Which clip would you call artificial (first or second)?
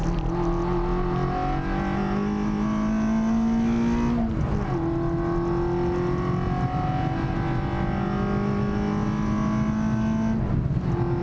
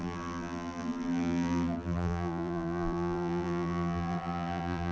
second